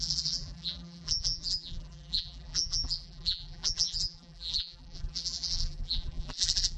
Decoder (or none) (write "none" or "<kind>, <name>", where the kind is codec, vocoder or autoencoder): vocoder, BigVGAN v2